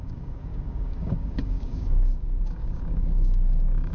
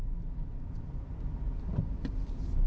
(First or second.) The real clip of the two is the second